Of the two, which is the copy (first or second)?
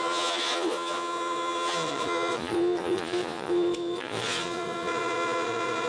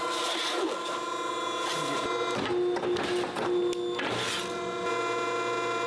first